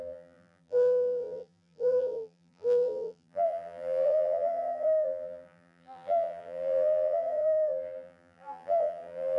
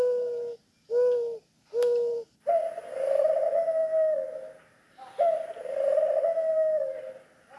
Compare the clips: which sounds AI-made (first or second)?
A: first